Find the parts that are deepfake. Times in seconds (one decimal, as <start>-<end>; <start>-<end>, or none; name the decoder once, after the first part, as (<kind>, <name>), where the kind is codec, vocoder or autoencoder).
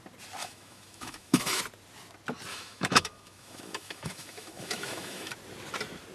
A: 0.4-1.6 (autoencoder, DAC-VAE); 2.5-5.3